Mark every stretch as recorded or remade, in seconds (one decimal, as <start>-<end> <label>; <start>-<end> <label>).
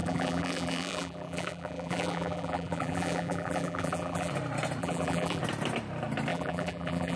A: 0.0-4.3 remade; 4.3-4.8 recorded; 4.8-5.4 remade; 5.4-6.3 recorded; 6.3-7.2 remade